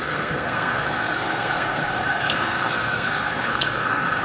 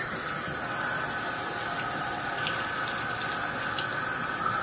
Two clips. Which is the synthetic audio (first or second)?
first